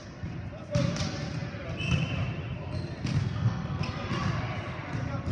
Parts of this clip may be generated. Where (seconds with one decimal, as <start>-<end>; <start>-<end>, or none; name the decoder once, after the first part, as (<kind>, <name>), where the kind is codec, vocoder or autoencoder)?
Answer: 3.2-3.8 (codec, SNAC)